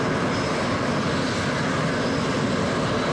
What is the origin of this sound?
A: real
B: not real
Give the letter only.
A